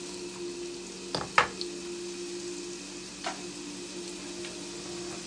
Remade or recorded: recorded